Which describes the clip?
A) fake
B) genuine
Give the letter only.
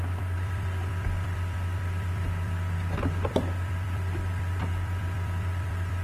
A